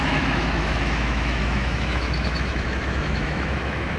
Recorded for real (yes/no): no